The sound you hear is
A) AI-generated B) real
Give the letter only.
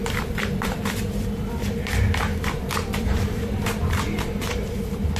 A